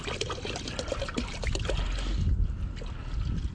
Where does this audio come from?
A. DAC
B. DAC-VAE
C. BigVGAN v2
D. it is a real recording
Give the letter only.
D